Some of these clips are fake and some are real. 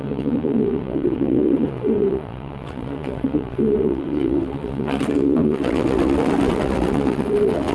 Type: fake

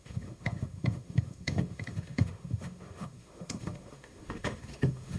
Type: fake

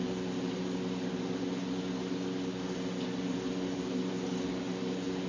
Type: real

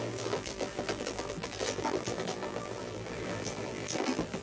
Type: fake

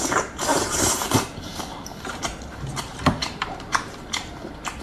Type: fake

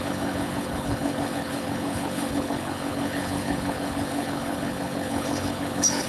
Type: fake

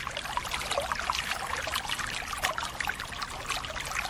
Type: real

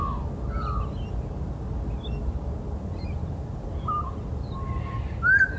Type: real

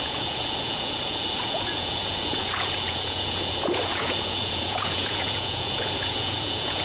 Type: fake